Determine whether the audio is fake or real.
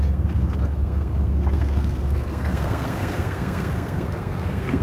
fake